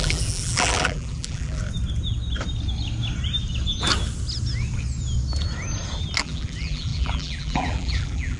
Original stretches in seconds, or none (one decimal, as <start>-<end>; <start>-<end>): 1.6-6.2